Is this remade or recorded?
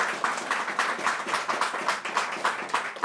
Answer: recorded